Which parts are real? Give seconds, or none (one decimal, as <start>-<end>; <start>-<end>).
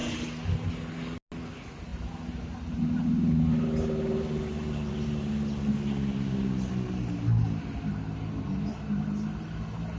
0.0-10.0